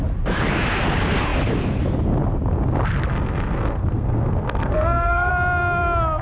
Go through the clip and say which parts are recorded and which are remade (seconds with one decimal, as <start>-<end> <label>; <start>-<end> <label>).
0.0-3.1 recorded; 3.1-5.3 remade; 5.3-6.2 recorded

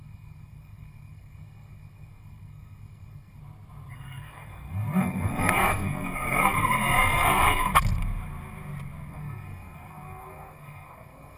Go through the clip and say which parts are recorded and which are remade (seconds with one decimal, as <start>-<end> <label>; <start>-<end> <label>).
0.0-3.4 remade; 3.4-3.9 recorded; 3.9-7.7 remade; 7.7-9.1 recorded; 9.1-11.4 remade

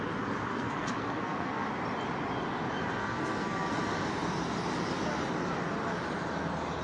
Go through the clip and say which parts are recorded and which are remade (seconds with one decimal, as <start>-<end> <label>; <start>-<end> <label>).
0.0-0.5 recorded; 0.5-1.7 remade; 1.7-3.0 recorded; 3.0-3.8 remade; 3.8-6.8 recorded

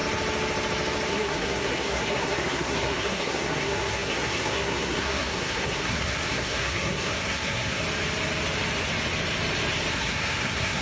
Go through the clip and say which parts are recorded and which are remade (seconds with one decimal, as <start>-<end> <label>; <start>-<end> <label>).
0.0-1.1 recorded; 1.1-7.8 remade; 7.8-9.9 recorded; 9.9-10.8 remade